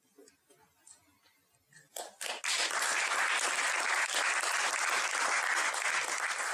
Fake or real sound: real